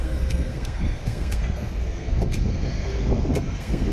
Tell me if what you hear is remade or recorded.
remade